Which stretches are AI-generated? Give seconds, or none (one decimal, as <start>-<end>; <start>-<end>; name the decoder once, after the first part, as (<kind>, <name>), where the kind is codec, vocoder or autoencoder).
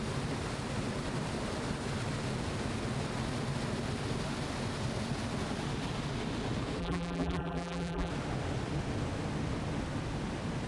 6.8-8.1 (vocoder, BigVGAN v2)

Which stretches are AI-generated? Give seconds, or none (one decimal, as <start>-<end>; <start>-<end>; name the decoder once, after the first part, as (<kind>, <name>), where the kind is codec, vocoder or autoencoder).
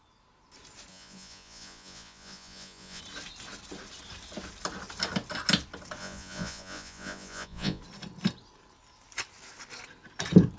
0.9-3.0 (vocoder, Vocos); 6.0-7.8